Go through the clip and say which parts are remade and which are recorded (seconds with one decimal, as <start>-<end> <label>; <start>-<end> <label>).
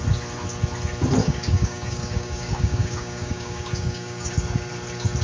0.0-1.2 recorded; 1.2-4.3 remade; 4.3-5.2 recorded